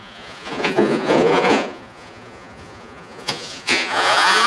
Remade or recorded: remade